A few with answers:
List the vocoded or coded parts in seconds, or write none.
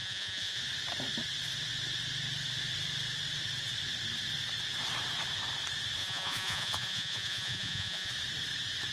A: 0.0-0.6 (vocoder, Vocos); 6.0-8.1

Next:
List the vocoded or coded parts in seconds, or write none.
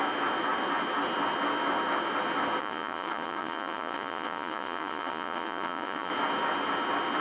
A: 2.6-6.1 (vocoder, Vocos)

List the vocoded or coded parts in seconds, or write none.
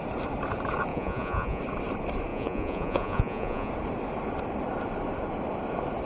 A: 0.9-1.6 (vocoder, Vocos); 2.3-3.7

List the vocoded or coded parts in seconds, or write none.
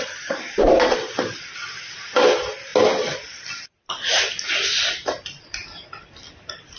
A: none